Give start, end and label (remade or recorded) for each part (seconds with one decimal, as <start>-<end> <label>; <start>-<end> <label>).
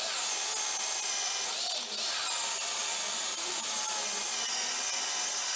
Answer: 0.0-5.6 recorded